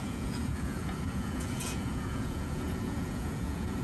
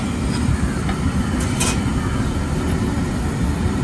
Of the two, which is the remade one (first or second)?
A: first